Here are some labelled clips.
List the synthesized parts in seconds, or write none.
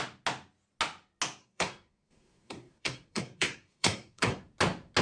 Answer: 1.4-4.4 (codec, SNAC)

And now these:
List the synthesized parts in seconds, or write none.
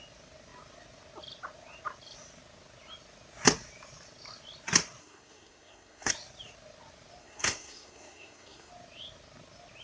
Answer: 5.0-6.1 (codec, SNAC); 7.2-8.7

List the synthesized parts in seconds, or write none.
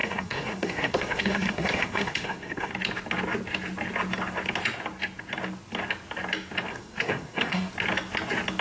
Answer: 0.0-2.7 (codec, SNAC); 6.7-7.7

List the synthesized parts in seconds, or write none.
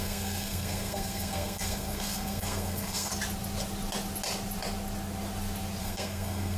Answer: 0.0-3.1 (codec, SNAC); 5.8-6.6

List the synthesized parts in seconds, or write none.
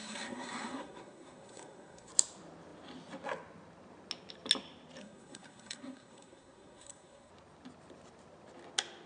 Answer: 0.0-2.1 (codec, SNAC); 5.0-7.3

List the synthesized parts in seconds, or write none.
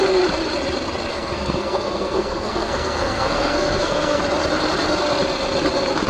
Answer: 1.1-4.2 (codec, SNAC)